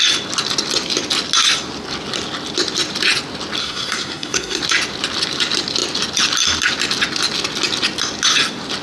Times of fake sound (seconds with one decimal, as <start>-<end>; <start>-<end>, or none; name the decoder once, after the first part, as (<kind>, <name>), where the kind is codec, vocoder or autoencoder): 3.6-4.6 (codec, SNAC)